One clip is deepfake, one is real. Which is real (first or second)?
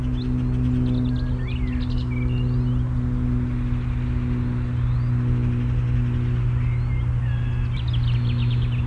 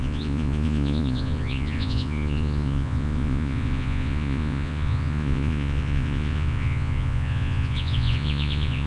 first